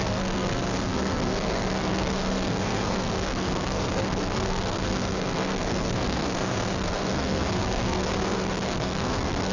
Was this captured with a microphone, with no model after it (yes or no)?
no